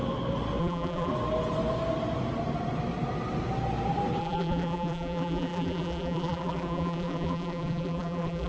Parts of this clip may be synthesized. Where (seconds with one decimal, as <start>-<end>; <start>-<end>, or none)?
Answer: 0.6-1.1; 4.2-8.5